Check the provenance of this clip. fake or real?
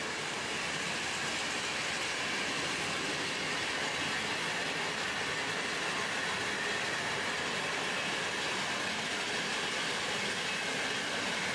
real